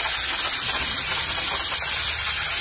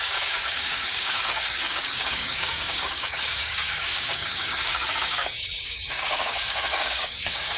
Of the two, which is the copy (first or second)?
second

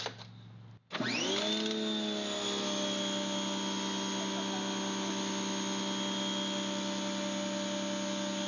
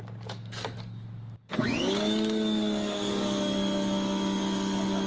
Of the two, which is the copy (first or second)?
second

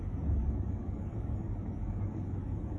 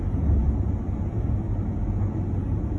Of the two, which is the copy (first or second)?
first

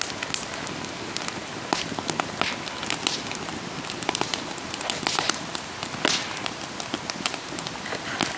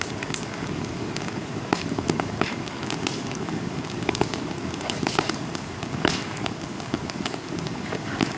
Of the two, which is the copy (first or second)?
second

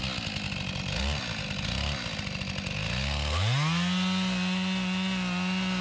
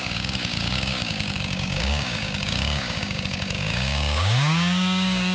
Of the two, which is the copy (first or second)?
second